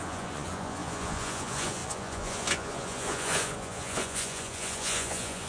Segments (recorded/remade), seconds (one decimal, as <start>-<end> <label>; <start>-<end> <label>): 0.0-5.5 remade